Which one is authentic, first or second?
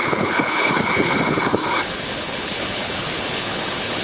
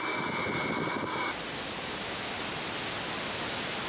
second